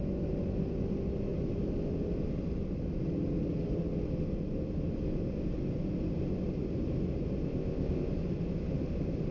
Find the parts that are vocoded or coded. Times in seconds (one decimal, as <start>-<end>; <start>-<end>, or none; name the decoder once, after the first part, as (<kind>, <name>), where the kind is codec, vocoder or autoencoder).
7.5-8.1 (codec, ZipCodec)